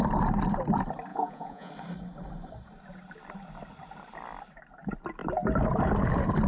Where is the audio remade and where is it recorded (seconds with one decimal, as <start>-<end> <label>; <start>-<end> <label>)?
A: 0.0-1.1 recorded; 1.1-1.7 remade; 1.7-6.5 recorded